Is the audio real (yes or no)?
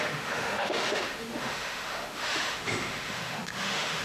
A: no